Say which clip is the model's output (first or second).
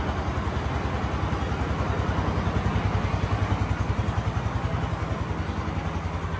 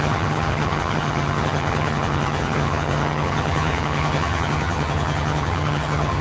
second